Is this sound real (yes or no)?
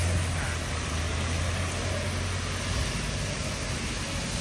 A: yes